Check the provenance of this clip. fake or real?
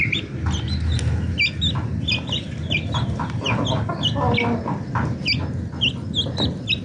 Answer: real